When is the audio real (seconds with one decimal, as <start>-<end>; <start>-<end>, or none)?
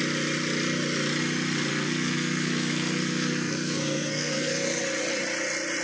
0.0-1.7; 4.8-5.8